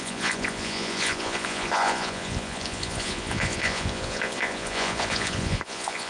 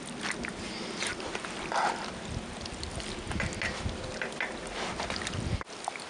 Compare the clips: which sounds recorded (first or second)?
second